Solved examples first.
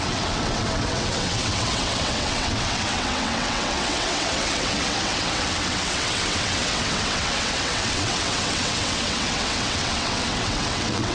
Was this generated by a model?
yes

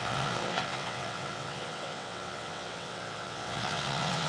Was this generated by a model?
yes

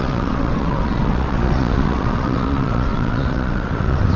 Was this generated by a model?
yes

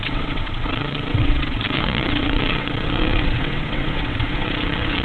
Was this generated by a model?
yes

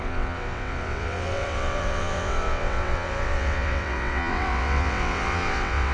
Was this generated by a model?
yes